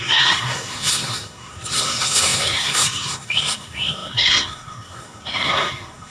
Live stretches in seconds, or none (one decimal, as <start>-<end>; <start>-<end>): none

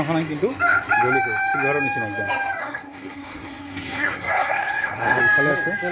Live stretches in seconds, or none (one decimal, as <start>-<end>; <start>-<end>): 0.0-2.6; 5.2-5.9